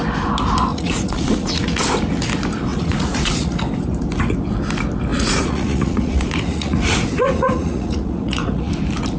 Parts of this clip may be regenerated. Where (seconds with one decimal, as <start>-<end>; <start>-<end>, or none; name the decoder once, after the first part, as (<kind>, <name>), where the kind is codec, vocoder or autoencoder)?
0.7-1.7 (vocoder, Vocos); 2.7-3.6; 5.1-8.7